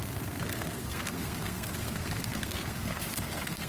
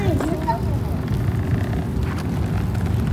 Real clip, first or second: second